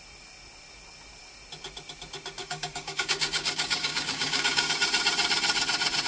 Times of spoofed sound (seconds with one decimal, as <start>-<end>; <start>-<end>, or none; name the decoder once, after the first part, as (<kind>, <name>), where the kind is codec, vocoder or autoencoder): 2.4-4.7 (codec, DAC)